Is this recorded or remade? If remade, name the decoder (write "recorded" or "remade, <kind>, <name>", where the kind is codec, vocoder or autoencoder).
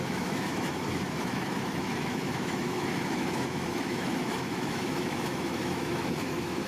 remade, autoencoder, DAC-VAE